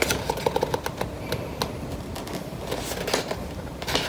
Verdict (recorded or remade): recorded